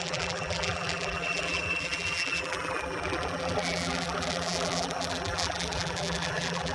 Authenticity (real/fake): fake